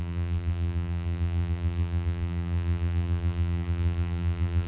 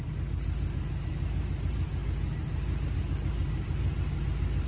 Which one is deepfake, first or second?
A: first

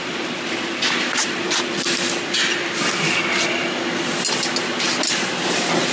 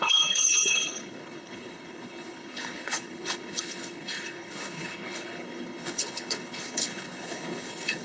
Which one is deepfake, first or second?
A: second